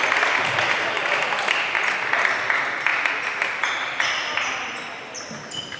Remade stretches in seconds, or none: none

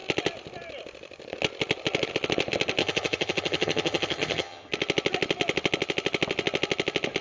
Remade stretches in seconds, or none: 2.8-4.7 (vocoder, HiFi-GAN)